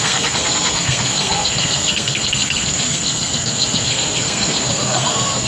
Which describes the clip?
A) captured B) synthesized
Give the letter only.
B